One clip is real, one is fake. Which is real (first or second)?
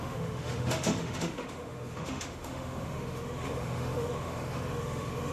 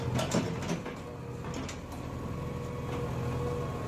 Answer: second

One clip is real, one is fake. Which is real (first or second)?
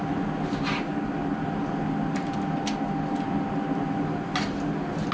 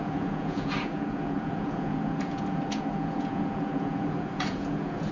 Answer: first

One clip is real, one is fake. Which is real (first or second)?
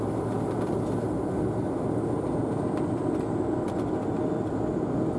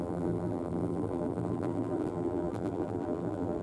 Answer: first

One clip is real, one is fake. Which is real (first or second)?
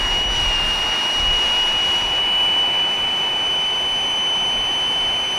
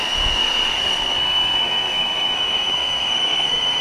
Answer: first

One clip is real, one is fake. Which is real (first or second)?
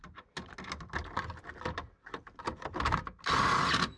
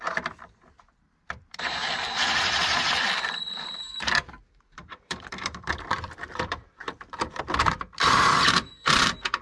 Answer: first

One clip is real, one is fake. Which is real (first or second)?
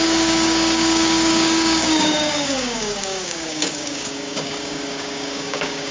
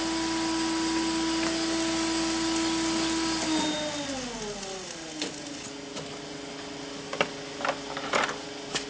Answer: second